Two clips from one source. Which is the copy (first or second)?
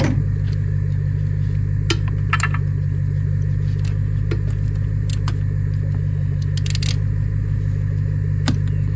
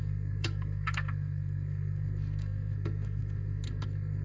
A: second